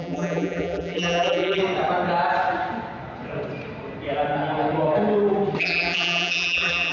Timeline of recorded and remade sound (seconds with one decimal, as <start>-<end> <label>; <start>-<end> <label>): 0.0-1.6 remade; 1.6-5.6 recorded; 5.6-6.9 remade